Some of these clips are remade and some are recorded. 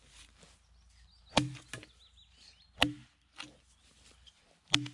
recorded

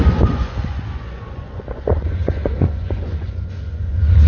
remade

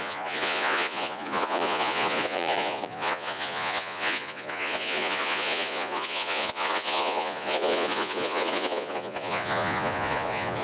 remade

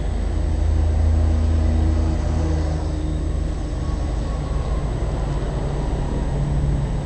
recorded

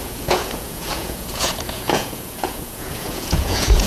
remade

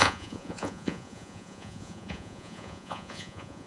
remade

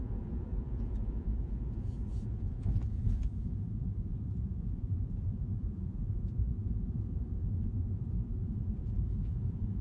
remade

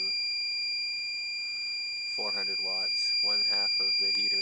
recorded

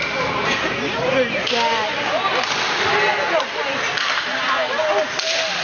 recorded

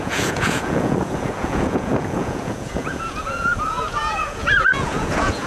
remade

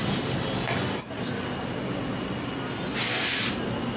recorded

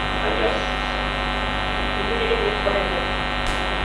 recorded